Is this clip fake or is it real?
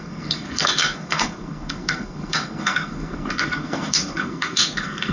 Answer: fake